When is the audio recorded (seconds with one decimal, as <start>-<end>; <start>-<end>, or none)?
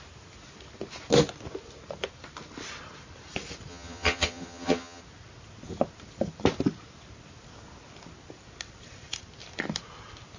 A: 0.0-3.7; 5.0-10.4